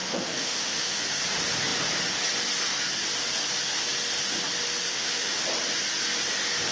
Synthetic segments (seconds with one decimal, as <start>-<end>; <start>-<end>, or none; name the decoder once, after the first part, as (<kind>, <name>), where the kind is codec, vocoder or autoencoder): 0.0-1.0 (autoencoder, DAC-VAE); 4.8-5.4